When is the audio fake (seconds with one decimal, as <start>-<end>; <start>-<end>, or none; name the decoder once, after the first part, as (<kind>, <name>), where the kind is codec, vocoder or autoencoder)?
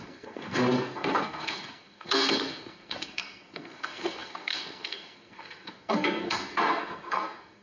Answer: 0.0-7.6 (codec, SNAC)